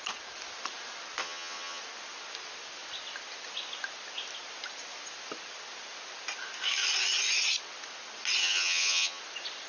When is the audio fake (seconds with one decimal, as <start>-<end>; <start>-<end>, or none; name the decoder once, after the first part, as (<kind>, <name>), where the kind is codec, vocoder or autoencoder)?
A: 1.2-1.8 (vocoder, HiFi-GAN); 8.4-9.2